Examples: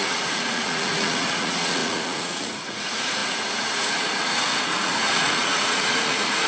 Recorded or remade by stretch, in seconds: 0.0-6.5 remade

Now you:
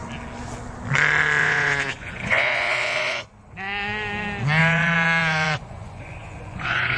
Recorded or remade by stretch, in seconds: 0.0-1.4 recorded; 1.4-3.3 remade; 3.3-4.6 recorded; 4.6-7.0 remade

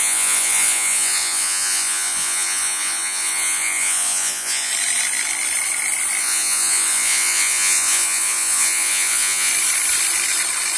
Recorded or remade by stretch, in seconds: 0.0-4.7 remade; 4.7-6.2 recorded; 6.2-9.5 remade; 9.5-10.8 recorded

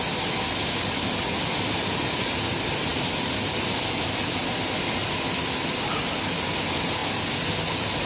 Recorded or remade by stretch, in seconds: 0.0-8.1 recorded

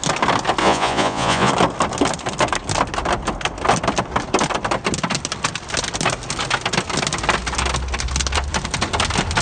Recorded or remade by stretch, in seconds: 0.0-0.6 recorded; 0.6-1.5 remade; 1.5-9.4 recorded